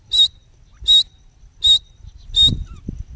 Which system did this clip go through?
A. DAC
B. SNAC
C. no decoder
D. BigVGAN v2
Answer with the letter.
C